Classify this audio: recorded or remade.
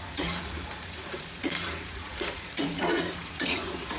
remade